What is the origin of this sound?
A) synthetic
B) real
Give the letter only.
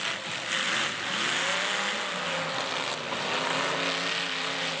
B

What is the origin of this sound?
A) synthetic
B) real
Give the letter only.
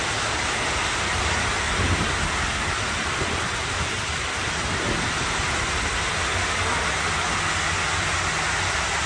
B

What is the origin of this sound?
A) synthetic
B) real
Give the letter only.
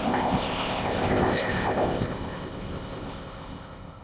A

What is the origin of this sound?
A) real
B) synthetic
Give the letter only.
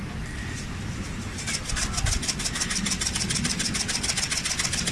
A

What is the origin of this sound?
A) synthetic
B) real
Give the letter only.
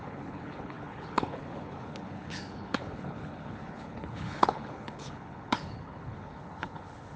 A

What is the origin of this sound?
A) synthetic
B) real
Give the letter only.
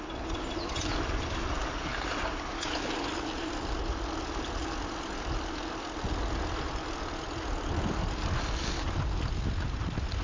B